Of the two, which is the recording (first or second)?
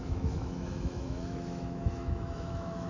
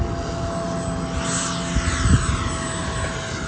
second